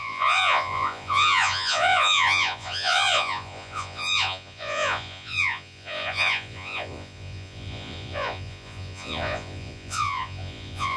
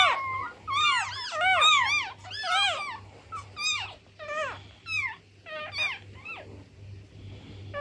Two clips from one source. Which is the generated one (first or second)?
first